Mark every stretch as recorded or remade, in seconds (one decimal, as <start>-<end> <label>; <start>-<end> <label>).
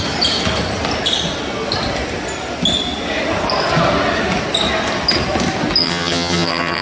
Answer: 0.0-5.8 recorded; 5.8-6.8 remade